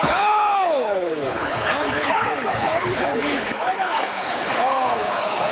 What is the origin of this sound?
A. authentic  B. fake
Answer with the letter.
B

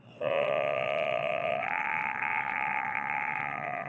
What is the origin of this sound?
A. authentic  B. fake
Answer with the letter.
B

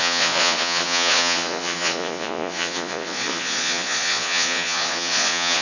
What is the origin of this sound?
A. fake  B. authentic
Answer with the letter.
A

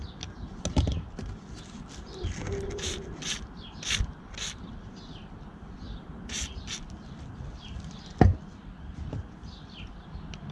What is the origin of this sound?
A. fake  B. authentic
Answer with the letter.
B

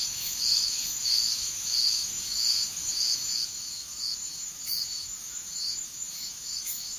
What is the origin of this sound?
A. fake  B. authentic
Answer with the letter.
A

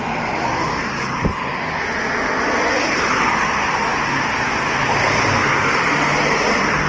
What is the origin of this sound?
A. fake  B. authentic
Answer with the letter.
B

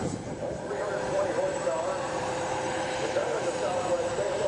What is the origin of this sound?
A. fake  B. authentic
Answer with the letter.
A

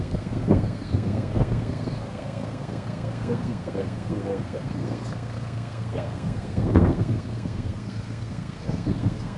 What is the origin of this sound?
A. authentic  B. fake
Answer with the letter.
B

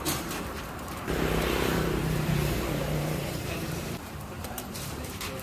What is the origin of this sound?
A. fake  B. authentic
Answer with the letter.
A